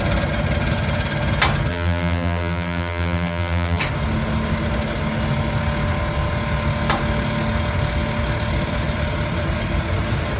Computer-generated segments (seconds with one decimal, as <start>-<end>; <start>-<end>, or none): 1.7-3.8